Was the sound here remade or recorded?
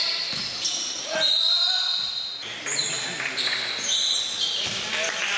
recorded